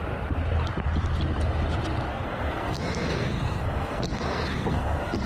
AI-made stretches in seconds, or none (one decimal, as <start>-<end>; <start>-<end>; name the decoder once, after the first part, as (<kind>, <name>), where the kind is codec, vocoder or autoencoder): 2.1-5.3 (codec, SNAC)